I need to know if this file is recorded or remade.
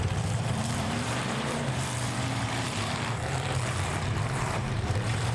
remade